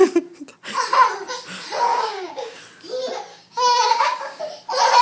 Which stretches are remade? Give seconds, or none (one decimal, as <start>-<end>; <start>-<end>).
1.9-2.6; 3.3-4.4